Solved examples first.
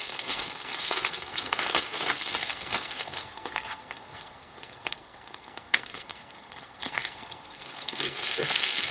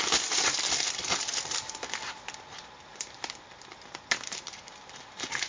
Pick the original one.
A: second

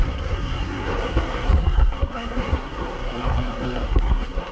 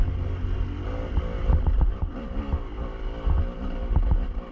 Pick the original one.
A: second